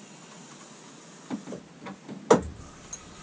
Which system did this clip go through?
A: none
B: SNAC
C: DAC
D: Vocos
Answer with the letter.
A